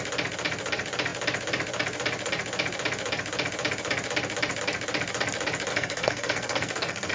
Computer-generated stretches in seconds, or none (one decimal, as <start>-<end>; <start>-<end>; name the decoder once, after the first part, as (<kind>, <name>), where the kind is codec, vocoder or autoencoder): 5.7-7.1 (codec, SNAC)